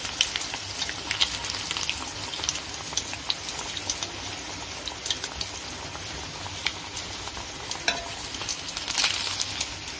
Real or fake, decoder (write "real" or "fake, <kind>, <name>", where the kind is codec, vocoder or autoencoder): real